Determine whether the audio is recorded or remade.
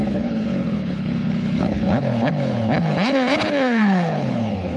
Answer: remade